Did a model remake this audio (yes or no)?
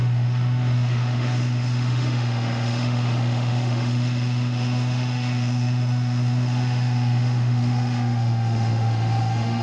yes